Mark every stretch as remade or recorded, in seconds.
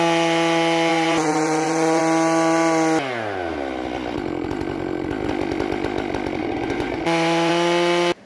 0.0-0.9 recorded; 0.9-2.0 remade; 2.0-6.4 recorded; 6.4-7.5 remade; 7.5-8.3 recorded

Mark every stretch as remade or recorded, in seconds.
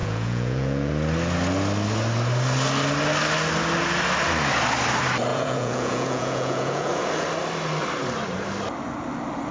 0.0-0.9 remade; 0.9-5.3 recorded; 5.3-6.9 remade; 6.9-9.5 recorded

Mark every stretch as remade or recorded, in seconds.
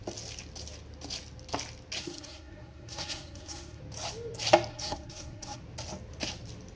0.0-2.0 recorded; 2.0-3.8 remade; 3.8-4.7 recorded; 4.7-5.6 remade; 5.6-6.8 recorded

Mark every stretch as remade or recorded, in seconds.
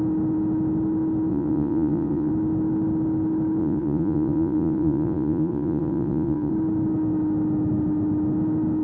0.0-1.3 recorded; 1.3-2.3 remade; 2.3-3.6 recorded; 3.6-6.5 remade; 6.5-8.8 recorded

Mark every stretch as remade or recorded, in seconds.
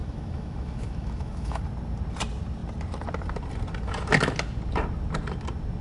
0.0-1.6 remade; 1.6-5.8 recorded